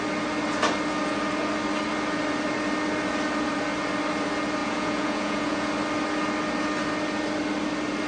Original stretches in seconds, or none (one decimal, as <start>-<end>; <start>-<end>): 0.0-4.6; 5.7-8.1